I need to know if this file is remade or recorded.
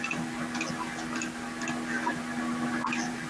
recorded